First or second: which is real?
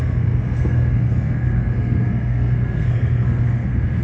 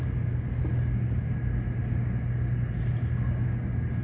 second